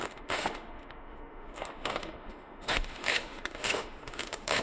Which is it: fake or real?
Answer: fake